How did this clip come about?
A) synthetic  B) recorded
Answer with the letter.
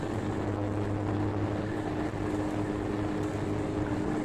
B